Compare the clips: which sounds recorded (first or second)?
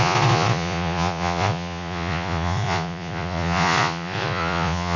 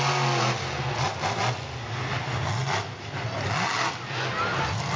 second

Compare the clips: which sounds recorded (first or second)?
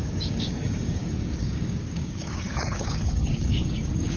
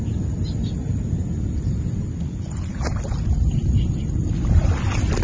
second